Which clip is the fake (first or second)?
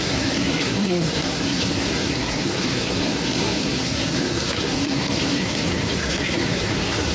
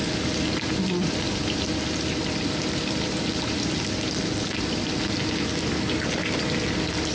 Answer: first